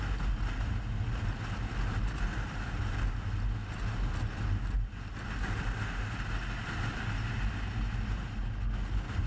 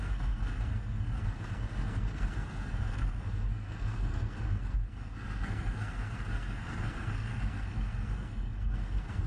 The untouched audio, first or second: first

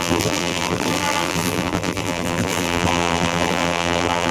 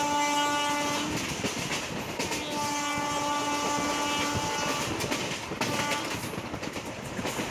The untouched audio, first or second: second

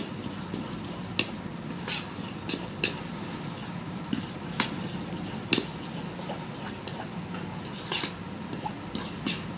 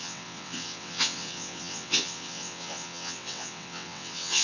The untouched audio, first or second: first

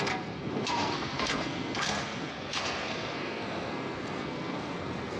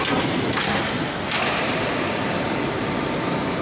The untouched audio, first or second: second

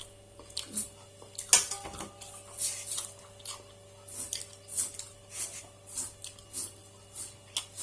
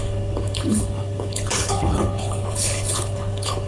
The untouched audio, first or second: first